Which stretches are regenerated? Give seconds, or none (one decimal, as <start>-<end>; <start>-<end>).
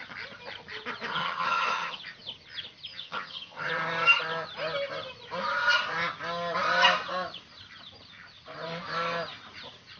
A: 1.1-2.0; 2.9-3.7